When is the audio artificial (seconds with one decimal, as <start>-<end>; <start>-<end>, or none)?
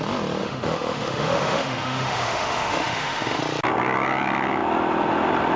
0.4-3.4